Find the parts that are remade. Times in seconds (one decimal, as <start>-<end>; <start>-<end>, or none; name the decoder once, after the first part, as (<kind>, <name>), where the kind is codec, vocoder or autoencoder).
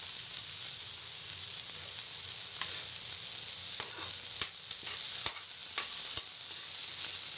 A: none